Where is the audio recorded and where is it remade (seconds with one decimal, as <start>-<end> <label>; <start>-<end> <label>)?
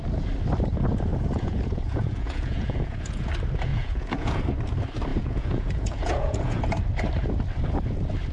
0.0-1.1 recorded; 1.1-3.3 remade; 3.3-3.7 recorded; 3.7-4.4 remade; 4.4-5.1 recorded; 5.1-6.6 remade; 6.6-8.3 recorded